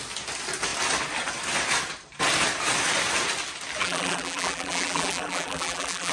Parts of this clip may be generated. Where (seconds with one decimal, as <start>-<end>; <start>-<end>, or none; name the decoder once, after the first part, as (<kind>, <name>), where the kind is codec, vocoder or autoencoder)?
3.8-6.1 (vocoder, BigVGAN v2)